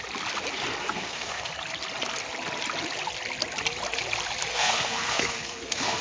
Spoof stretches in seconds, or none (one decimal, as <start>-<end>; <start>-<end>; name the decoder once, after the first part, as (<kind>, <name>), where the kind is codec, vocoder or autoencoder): 0.8-1.5 (codec, SNAC); 4.5-6.0